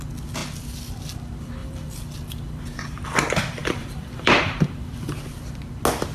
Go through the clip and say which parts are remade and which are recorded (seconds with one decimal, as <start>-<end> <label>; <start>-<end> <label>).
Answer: 0.0-1.6 recorded; 1.6-2.6 remade; 2.6-3.6 recorded; 3.6-5.4 remade; 5.4-6.1 recorded